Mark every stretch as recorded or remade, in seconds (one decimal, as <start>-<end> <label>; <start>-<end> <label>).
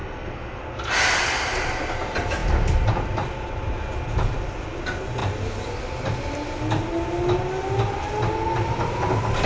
0.0-0.6 remade; 0.6-9.5 recorded